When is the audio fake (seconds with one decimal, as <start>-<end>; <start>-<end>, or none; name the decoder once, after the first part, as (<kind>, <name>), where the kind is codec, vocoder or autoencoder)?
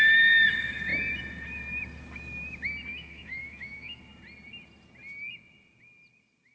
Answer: 2.9-4.0 (autoencoder, DAC-VAE)